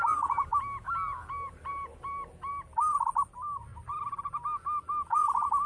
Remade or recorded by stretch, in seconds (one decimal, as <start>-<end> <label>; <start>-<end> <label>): 0.0-3.7 recorded; 3.7-4.2 remade; 4.2-5.7 recorded